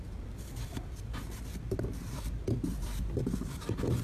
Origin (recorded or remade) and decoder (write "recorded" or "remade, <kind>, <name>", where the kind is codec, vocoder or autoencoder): remade, vocoder, BigVGAN v2